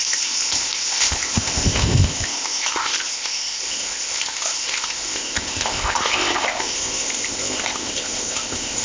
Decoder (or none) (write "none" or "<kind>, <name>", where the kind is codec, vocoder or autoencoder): codec, ZipCodec